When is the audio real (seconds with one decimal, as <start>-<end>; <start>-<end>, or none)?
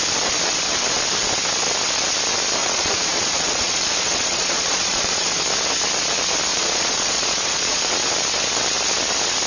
0.0-2.6; 5.4-6.5; 7.9-9.5